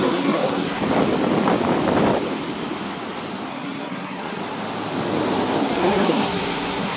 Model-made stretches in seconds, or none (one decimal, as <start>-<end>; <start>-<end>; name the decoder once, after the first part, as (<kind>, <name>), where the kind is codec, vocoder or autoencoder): 0.0-0.8 (codec, SNAC); 3.5-4.4; 5.6-7.0